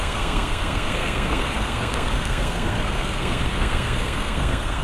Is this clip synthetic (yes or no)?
yes